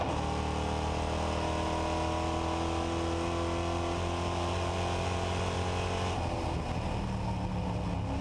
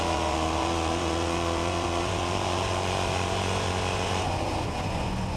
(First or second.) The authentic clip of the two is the first